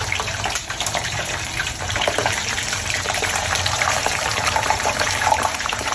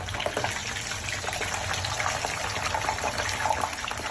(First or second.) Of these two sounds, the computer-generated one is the first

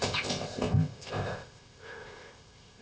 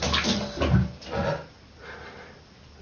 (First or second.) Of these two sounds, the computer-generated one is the first